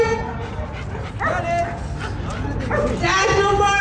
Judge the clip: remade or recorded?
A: recorded